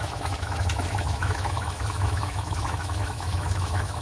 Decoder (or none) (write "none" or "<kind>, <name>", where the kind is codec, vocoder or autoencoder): autoencoder, DAC-VAE